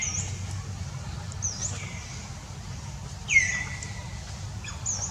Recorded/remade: recorded